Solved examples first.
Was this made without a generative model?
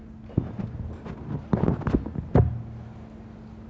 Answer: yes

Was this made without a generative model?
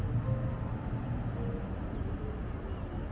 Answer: yes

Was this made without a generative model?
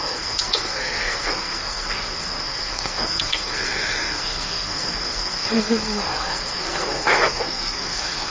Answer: no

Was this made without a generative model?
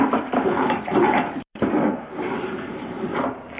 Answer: no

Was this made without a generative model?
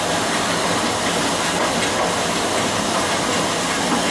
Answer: yes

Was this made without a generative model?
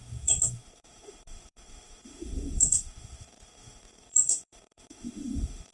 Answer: no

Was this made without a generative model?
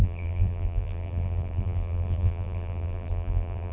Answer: no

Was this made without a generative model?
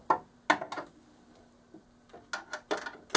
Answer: yes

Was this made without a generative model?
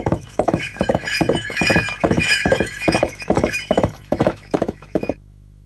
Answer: no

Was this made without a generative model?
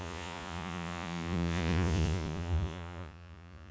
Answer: no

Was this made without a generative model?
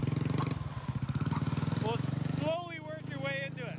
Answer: yes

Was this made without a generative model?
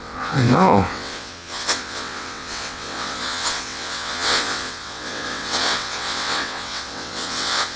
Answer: no